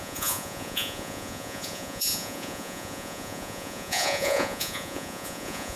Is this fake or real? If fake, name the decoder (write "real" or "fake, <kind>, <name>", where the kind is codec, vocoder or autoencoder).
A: fake, vocoder, Vocos